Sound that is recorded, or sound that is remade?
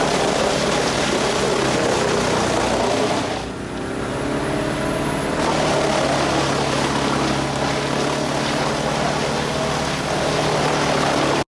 recorded